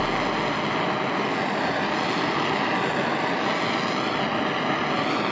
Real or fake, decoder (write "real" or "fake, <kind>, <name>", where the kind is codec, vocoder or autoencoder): real